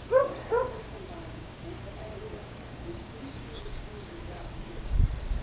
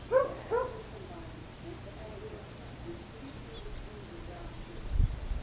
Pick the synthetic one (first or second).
first